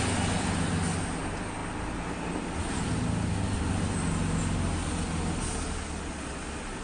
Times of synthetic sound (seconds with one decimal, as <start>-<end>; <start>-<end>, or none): none